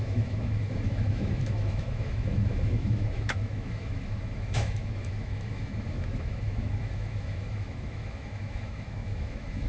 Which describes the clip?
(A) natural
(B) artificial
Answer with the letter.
B